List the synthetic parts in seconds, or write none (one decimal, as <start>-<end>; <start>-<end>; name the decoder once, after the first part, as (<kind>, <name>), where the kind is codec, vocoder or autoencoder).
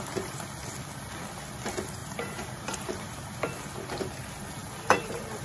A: 2.0-3.4 (vocoder, BigVGAN v2)